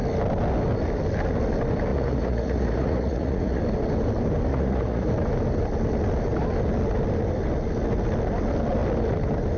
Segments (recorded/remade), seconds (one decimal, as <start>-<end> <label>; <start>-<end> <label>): 0.0-1.9 recorded; 1.9-3.6 remade; 3.6-4.5 recorded; 4.5-5.1 remade; 5.1-9.6 recorded